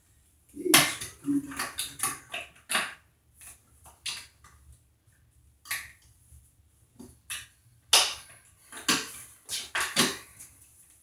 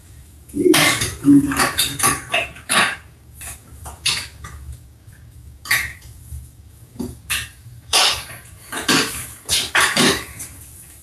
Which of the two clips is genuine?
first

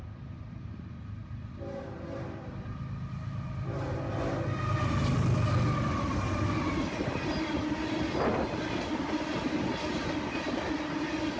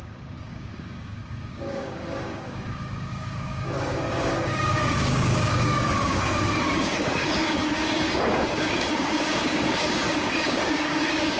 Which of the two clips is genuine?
first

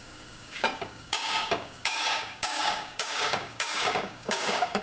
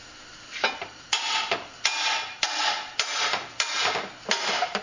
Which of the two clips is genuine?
second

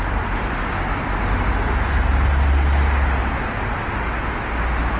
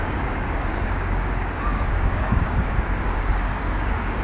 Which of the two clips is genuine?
first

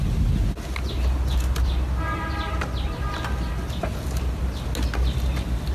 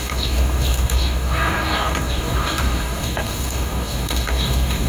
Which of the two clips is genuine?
first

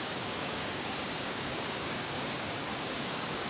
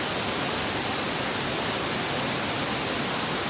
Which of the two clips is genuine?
second